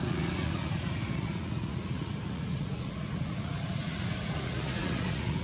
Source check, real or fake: fake